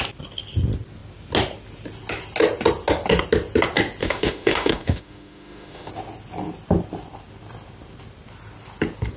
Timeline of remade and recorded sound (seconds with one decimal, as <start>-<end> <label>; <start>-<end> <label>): 0.0-4.0 recorded; 4.0-5.9 remade; 5.9-9.2 recorded